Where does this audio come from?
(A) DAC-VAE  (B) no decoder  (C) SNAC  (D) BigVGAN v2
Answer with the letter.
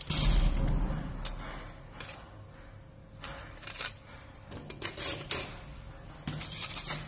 B